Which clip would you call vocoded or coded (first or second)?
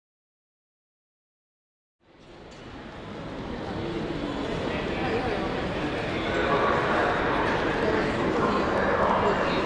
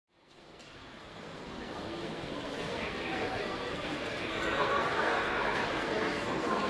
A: second